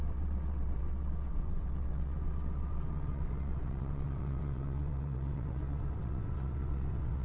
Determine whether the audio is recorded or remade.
remade